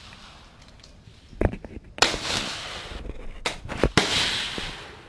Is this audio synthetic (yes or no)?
no